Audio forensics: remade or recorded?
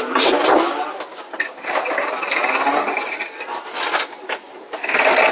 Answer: recorded